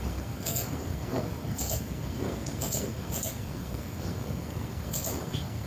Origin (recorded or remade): remade